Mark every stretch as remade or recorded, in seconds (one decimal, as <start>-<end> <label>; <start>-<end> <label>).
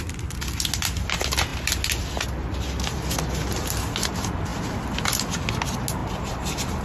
0.0-6.0 recorded; 6.0-6.8 remade